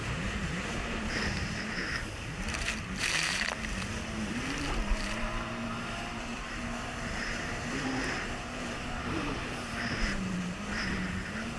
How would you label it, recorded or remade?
remade